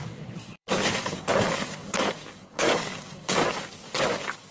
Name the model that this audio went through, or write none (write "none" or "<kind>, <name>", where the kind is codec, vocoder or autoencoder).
codec, DAC